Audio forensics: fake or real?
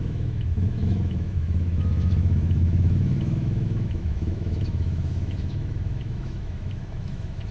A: fake